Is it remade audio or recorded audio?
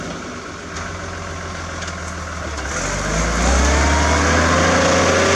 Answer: recorded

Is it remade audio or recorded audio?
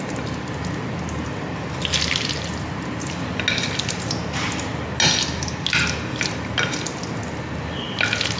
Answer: recorded